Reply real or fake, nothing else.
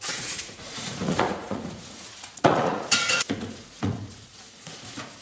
fake